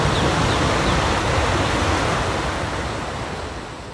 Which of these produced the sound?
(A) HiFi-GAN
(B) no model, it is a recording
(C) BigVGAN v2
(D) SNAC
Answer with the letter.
B